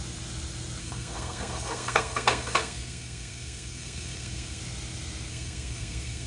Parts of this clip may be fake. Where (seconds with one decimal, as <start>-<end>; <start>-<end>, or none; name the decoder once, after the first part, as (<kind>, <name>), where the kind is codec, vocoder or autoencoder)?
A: 0.8-4.6 (codec, SNAC); 5.3-6.3